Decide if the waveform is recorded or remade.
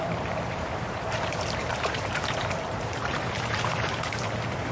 remade